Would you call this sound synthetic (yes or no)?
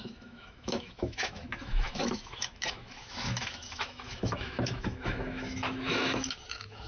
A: yes